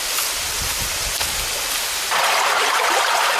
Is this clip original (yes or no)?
yes